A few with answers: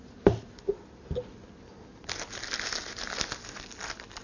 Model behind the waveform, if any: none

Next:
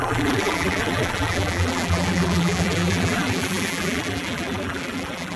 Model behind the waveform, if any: vocoder, BigVGAN v2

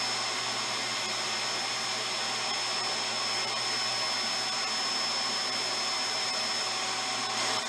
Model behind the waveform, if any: none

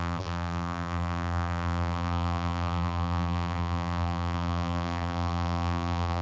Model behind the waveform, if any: vocoder, BigVGAN v2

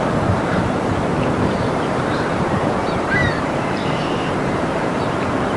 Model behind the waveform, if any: vocoder, BigVGAN v2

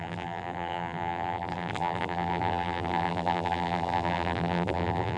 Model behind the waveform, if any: vocoder, BigVGAN v2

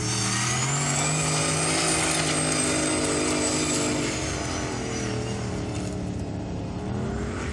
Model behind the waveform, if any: none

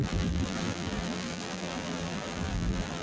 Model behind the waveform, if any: vocoder, BigVGAN v2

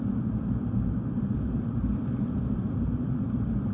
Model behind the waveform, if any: vocoder, BigVGAN v2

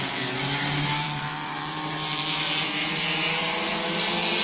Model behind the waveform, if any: vocoder, BigVGAN v2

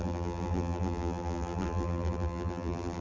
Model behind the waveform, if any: vocoder, BigVGAN v2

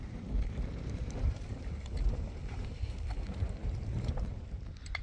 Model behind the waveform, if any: vocoder, BigVGAN v2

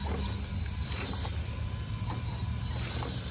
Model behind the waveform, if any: vocoder, BigVGAN v2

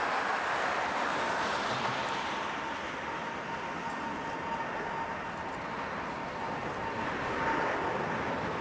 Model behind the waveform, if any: none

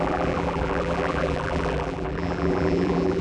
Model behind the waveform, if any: vocoder, BigVGAN v2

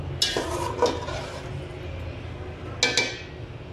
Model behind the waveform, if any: none